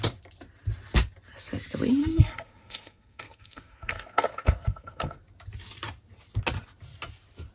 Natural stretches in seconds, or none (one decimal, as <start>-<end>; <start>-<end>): 0.0-2.0; 5.2-7.5